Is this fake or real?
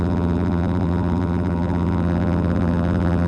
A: fake